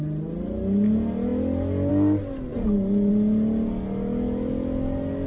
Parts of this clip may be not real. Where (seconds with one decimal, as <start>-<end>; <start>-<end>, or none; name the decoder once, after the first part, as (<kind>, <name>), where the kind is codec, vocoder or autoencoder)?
none